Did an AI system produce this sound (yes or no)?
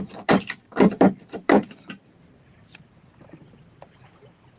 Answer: yes